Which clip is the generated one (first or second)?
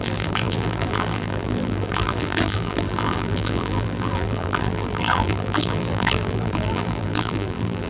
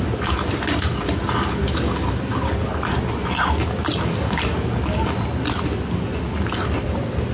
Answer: first